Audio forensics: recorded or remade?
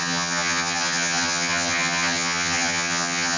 remade